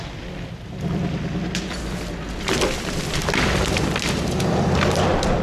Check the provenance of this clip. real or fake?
fake